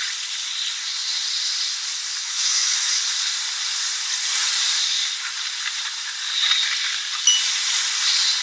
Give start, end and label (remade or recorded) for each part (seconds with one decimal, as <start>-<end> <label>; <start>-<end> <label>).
0.0-2.2 recorded; 2.2-3.0 remade; 3.0-8.4 recorded